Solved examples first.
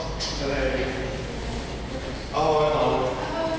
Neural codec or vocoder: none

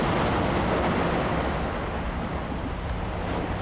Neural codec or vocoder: none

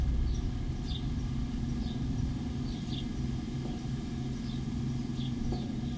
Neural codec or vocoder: none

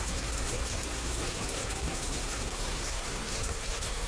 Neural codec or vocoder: codec, SNAC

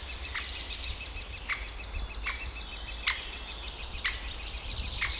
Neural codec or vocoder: none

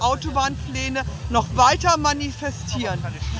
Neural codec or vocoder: none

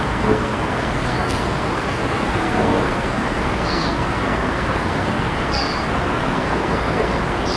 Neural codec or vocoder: codec, SNAC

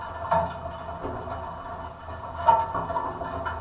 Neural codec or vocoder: none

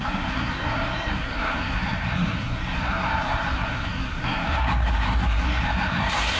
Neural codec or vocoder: codec, SNAC